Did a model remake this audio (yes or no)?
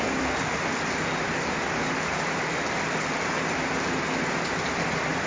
no